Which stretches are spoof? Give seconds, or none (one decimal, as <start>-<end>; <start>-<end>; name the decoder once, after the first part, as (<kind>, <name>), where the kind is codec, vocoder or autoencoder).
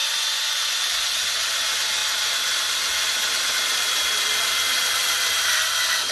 0.0-0.8 (vocoder, Vocos)